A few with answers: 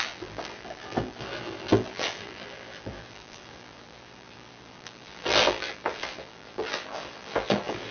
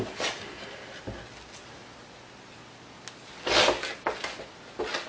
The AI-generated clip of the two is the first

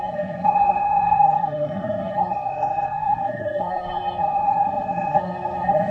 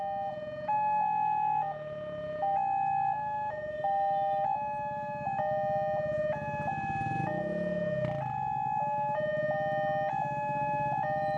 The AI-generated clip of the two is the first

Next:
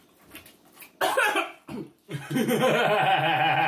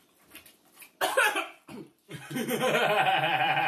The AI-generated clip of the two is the second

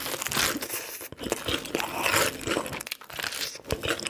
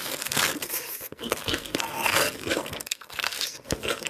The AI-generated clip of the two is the second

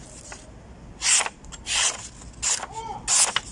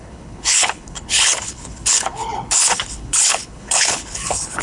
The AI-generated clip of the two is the second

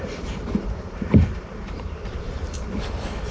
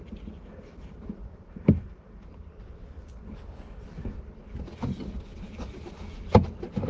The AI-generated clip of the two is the first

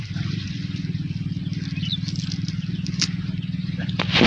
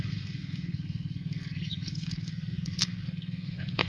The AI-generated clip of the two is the second